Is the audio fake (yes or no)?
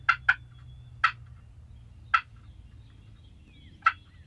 no